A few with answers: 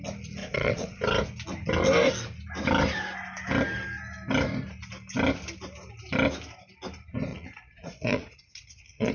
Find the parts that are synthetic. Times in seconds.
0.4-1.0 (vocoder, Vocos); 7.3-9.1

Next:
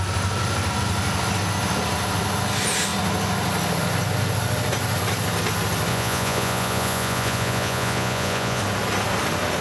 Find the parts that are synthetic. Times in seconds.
5.9-8.6 (vocoder, Vocos)